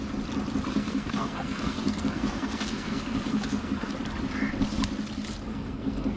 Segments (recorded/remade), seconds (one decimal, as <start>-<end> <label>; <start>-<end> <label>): 0.0-0.7 recorded; 0.7-3.9 remade; 3.9-5.5 recorded; 5.5-6.2 remade